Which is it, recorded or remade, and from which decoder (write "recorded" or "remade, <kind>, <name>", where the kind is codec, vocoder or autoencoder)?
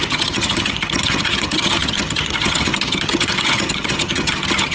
remade, vocoder, HiFi-GAN